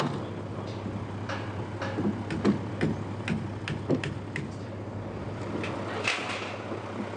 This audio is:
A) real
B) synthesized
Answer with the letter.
A